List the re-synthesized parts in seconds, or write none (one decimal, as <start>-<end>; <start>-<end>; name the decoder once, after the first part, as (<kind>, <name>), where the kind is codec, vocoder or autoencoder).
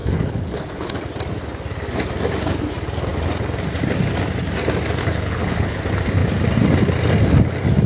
0.0-0.9 (codec, HILCodec); 5.0-5.8